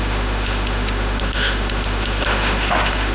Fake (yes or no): yes